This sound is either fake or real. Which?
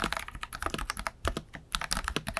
real